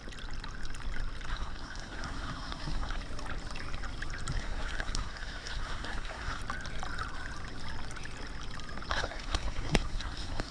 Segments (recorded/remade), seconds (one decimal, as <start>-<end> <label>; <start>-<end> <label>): 0.0-1.3 recorded; 1.3-3.0 remade; 3.0-4.3 recorded; 4.3-6.4 remade; 6.4-8.9 recorded; 8.9-10.5 remade